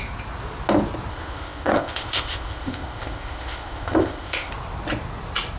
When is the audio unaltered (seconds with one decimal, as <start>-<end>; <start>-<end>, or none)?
0.0-1.1; 4.5-5.6